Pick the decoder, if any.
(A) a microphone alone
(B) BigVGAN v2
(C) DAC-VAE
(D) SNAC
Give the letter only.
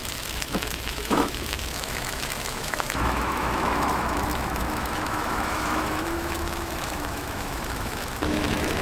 C